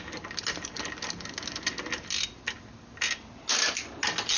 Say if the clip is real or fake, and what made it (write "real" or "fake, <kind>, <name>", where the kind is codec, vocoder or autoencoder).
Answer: real